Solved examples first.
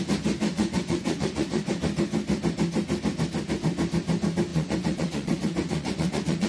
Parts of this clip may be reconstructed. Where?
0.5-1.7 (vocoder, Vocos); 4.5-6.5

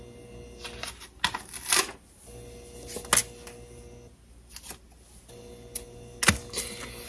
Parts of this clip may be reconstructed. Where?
none

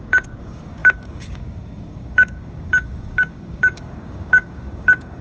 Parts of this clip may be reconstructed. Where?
0.0-5.2 (codec, DAC)

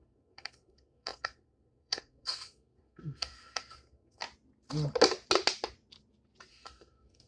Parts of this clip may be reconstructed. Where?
0.0-4.2 (codec, SNAC); 6.5-7.3

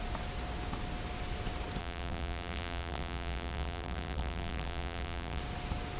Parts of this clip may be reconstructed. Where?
1.8-5.4 (vocoder, BigVGAN v2)

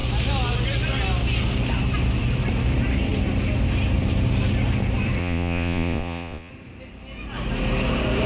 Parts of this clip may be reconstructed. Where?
5.2-6.5 (vocoder, Vocos)